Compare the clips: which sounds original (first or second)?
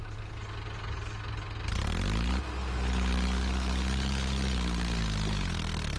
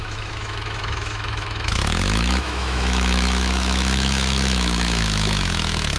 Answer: first